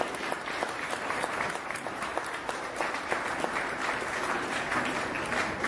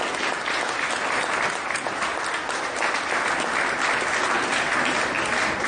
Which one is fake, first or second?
first